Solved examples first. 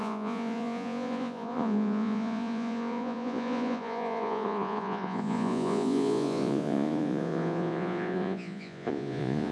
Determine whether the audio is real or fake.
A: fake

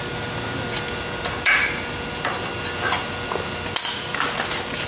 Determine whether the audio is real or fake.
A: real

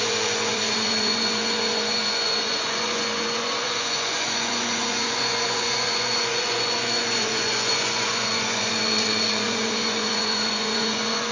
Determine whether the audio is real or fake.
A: fake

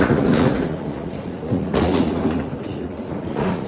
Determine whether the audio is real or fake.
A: fake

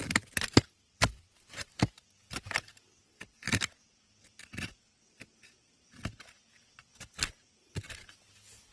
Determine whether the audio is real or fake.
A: real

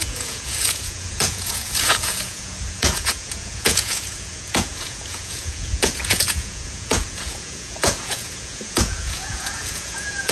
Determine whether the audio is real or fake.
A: fake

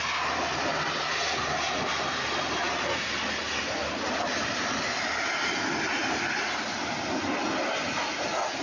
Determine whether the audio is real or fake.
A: real